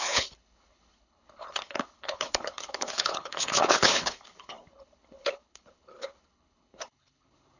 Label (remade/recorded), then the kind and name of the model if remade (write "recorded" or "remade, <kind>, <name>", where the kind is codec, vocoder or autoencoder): remade, codec, HILCodec